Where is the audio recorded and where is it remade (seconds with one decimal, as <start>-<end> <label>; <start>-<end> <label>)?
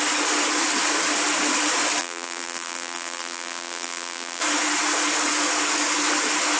0.0-2.0 recorded; 2.0-4.4 remade; 4.4-6.6 recorded